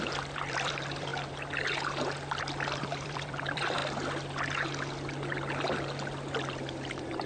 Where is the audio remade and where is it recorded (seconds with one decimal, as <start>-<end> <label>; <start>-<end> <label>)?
0.0-1.1 remade; 1.1-2.8 recorded; 2.8-3.8 remade; 3.8-7.3 recorded